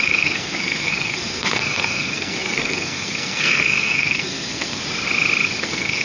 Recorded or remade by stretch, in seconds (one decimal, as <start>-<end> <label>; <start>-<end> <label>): 0.0-4.8 remade; 4.8-5.6 recorded; 5.6-6.0 remade